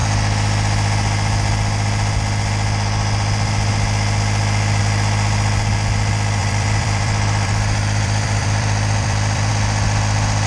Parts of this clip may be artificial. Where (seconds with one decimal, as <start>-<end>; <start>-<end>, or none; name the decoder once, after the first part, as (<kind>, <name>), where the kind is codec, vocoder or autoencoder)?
6.4-9.5 (vocoder, BigVGAN v2)